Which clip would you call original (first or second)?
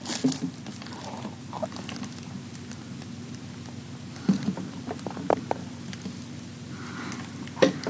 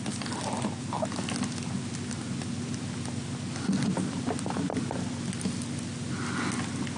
second